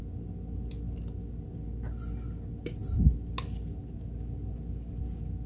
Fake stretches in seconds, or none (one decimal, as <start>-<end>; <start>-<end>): none